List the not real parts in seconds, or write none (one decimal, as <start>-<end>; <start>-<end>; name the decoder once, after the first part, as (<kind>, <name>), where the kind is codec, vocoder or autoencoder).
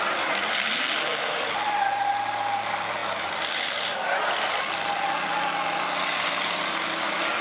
none